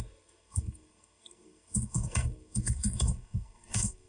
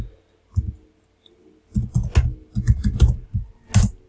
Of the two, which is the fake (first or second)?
first